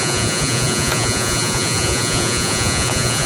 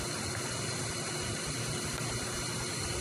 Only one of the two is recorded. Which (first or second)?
second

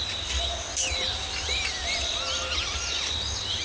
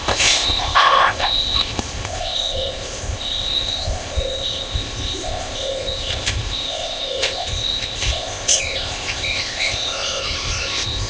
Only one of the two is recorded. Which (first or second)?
first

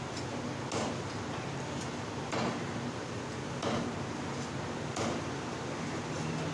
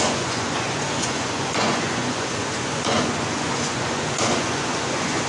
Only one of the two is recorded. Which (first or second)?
first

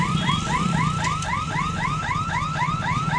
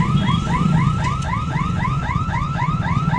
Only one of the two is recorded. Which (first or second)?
first